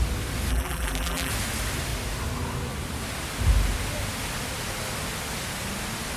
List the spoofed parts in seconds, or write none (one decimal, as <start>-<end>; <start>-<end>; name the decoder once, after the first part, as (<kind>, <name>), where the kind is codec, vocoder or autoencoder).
0.5-1.3 (vocoder, BigVGAN v2)